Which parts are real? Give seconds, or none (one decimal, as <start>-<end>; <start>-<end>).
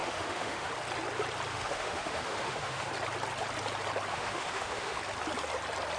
0.7-1.5; 2.9-4.1; 5.0-6.0